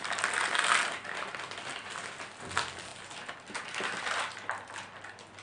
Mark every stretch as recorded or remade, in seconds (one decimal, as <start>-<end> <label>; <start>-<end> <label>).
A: 0.0-5.4 recorded